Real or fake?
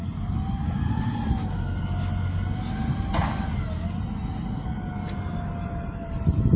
real